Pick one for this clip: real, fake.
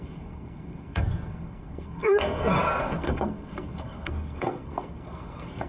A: fake